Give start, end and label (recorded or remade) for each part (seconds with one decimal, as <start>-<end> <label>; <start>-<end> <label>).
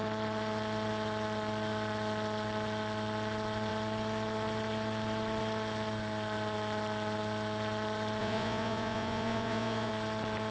0.0-8.2 recorded; 8.2-9.9 remade; 9.9-10.5 recorded